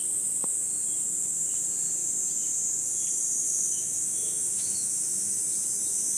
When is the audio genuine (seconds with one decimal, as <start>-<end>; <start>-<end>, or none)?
0.0-3.4; 5.4-6.2